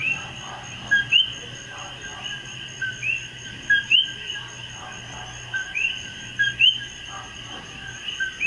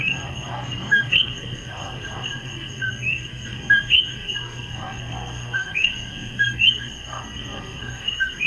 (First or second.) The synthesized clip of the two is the second